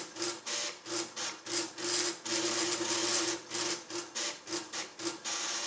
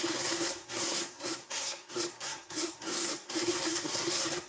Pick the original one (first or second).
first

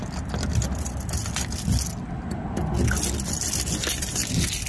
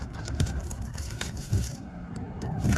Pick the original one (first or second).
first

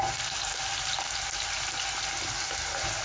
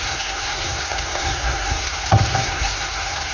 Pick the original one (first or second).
first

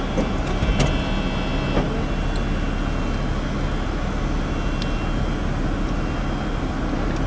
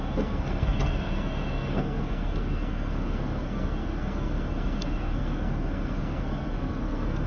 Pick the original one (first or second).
first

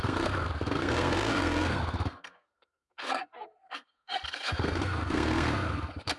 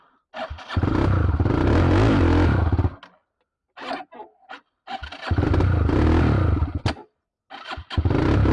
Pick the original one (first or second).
second